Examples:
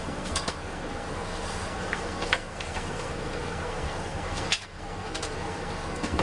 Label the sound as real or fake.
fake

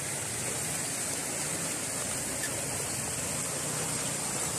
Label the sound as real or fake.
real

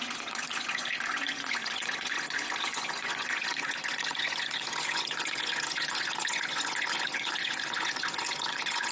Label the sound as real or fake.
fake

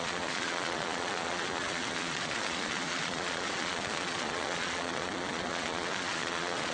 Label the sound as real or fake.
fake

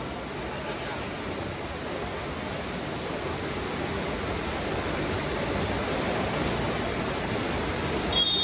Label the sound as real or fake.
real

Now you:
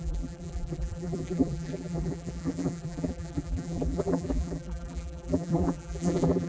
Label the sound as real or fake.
fake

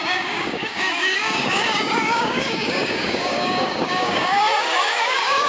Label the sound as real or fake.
fake